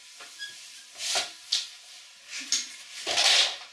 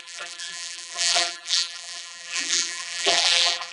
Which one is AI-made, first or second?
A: second